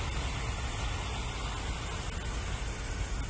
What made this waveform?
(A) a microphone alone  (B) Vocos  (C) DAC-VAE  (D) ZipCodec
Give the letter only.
A